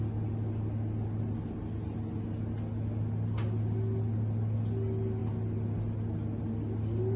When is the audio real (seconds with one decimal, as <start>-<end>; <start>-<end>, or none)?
0.0-7.2